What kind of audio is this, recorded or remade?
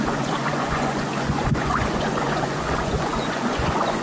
remade